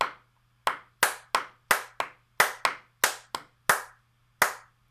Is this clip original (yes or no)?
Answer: yes